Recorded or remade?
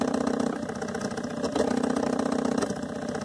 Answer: recorded